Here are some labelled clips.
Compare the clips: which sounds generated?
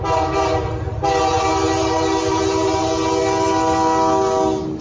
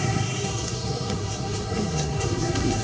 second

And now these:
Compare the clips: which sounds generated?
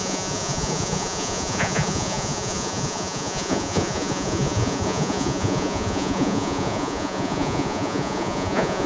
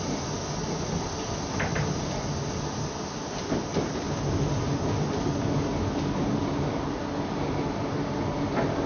first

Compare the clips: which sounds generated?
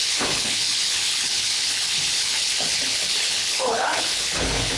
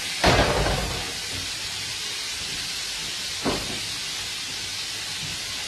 first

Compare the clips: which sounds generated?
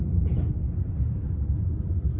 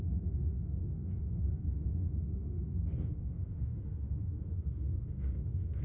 second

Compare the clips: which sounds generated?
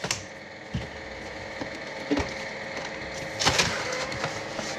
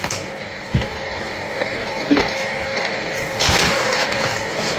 second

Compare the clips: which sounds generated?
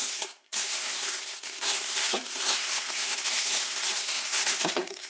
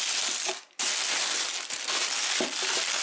first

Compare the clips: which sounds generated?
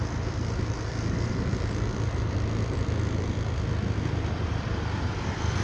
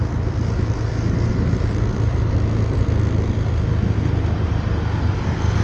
first